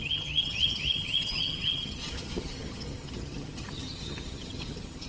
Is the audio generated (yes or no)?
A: yes